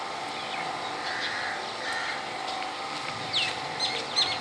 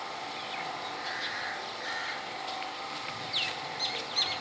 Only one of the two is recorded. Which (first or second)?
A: first